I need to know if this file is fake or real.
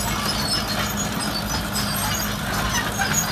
real